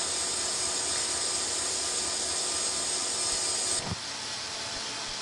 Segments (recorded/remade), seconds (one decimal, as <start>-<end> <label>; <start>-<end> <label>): 0.0-3.0 recorded; 3.0-5.2 remade